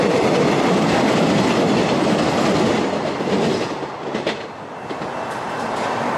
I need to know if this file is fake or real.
real